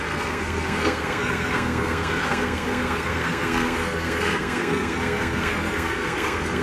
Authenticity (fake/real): fake